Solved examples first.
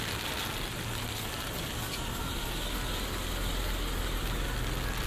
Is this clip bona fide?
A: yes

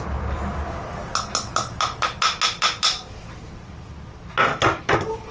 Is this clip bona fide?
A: yes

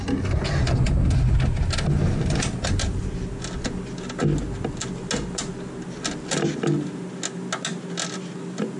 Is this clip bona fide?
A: yes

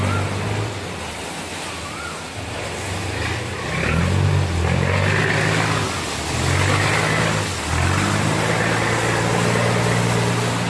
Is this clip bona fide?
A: yes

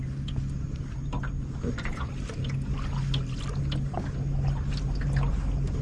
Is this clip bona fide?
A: yes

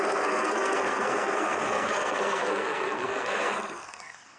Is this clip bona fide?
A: no